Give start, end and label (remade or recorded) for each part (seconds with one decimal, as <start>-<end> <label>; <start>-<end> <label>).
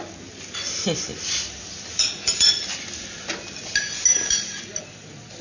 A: 0.0-5.4 recorded